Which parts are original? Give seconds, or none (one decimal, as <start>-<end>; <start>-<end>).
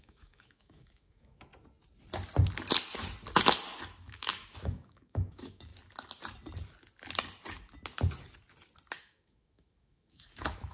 1.5-4.0; 5.7-9.0